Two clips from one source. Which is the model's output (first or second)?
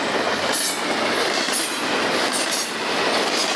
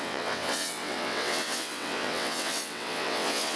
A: second